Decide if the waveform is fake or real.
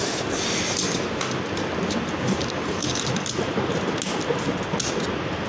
real